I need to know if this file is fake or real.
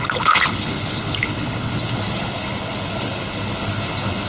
fake